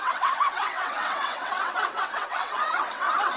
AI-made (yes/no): yes